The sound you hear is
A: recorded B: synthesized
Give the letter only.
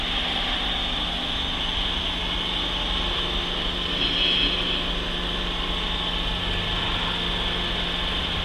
A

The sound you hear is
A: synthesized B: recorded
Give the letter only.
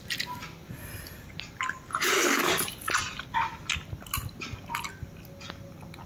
B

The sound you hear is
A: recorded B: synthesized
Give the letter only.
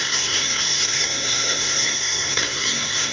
B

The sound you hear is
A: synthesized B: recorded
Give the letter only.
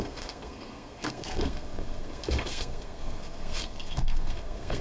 A